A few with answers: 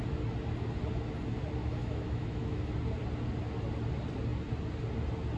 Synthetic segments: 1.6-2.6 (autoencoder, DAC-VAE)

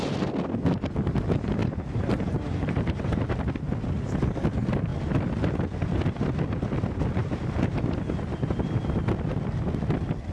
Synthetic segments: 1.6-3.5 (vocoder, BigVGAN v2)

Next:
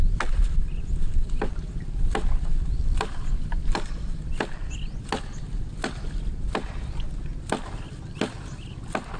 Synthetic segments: none

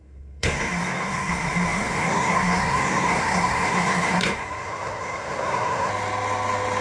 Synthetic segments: 0.0-5.9 (codec, SNAC)

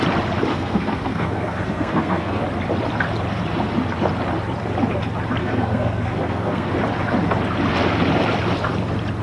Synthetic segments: 0.5-2.4 (codec, SNAC); 5.4-6.7